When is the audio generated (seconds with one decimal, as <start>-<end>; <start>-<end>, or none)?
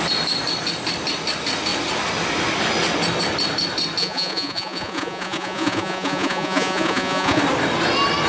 4.0-7.4